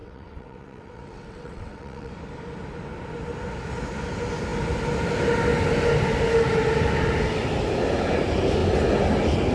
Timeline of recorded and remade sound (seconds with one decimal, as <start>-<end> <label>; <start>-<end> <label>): 0.0-2.1 remade; 2.1-9.5 recorded